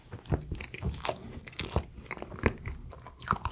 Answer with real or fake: real